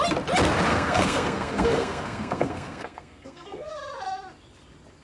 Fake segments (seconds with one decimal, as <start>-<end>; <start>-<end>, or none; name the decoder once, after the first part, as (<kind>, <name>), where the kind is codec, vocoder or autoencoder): 0.7-3.7 (codec, SNAC)